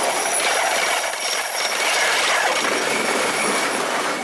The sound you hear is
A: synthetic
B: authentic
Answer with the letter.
B